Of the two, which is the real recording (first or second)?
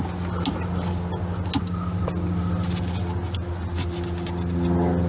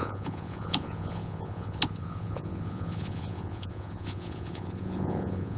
first